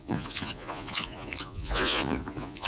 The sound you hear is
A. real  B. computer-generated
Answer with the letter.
B